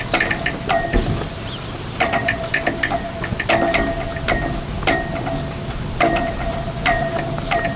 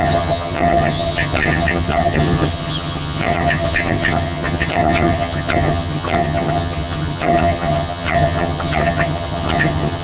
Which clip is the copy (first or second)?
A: second